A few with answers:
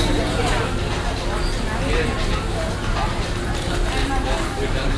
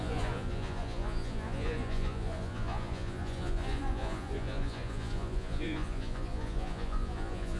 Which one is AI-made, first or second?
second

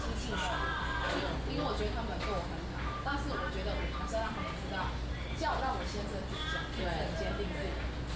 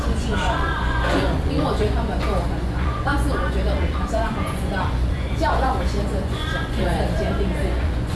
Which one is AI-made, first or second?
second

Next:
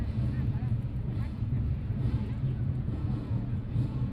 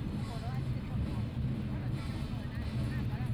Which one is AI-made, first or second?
first